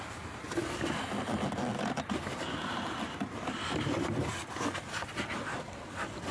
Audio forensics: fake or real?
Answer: real